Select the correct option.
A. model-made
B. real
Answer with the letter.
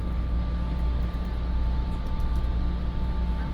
B